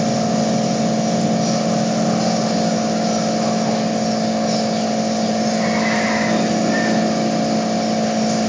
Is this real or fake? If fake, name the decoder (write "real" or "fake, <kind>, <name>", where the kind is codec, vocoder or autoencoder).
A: real